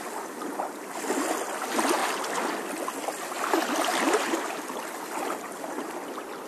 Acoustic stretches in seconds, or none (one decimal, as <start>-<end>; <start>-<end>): 0.0-3.9; 4.9-6.5